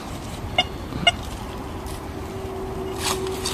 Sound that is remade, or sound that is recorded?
recorded